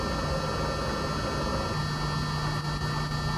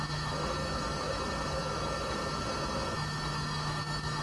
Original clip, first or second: first